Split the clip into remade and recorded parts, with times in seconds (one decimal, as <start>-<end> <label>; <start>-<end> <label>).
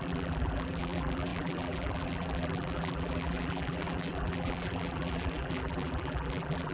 0.0-6.7 remade